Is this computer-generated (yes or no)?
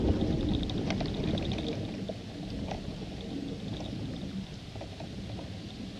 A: no